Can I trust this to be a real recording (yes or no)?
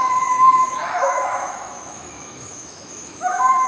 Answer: no